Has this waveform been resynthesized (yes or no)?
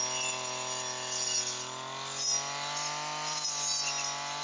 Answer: no